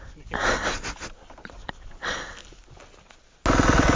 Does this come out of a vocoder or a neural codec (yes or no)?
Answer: no